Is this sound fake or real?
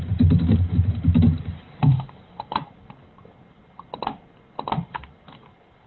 real